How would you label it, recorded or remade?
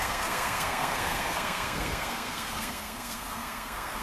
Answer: remade